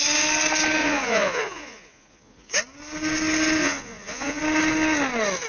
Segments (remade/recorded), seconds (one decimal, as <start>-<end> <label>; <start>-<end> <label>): 0.0-0.8 recorded; 0.8-2.5 remade; 2.5-3.6 recorded; 3.6-4.4 remade; 4.4-5.5 recorded